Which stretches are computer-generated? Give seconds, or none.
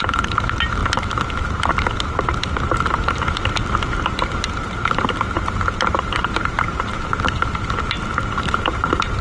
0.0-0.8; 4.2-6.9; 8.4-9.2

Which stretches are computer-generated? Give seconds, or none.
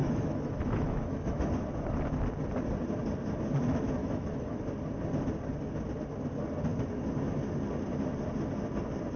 0.0-1.5; 4.0-4.6